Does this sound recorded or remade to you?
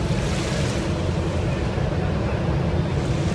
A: recorded